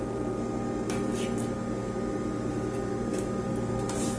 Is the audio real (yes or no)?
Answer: yes